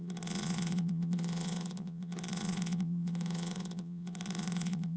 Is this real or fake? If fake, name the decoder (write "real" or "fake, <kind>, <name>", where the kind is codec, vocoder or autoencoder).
fake, vocoder, Vocos